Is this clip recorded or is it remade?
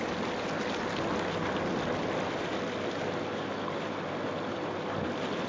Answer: recorded